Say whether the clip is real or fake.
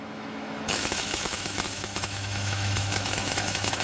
fake